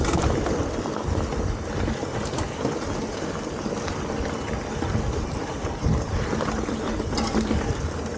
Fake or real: real